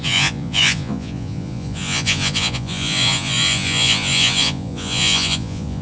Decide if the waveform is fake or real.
fake